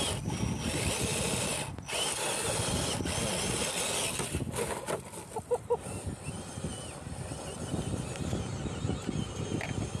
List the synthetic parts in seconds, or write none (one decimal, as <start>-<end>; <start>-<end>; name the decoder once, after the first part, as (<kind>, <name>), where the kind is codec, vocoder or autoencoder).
none